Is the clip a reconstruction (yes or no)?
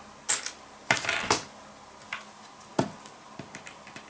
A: no